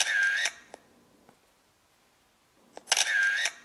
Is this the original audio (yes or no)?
yes